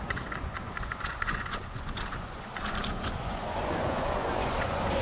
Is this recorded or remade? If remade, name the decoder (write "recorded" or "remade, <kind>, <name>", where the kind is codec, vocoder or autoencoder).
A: remade, vocoder, Vocos